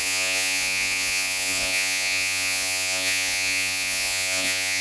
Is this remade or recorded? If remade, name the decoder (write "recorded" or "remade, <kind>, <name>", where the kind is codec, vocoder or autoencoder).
remade, vocoder, Vocos